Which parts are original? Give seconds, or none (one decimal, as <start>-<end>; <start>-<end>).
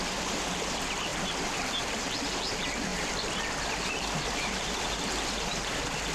0.0-6.1